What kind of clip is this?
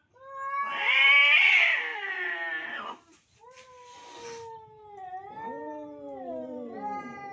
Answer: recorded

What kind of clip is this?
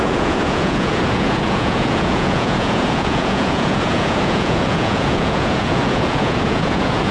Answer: remade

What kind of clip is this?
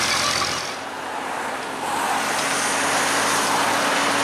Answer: recorded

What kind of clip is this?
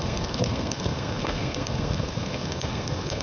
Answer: remade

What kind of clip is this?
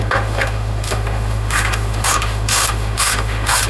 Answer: remade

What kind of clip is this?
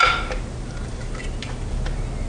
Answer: recorded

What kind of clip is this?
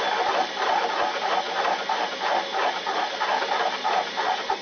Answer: recorded